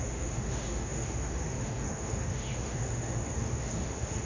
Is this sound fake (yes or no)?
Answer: yes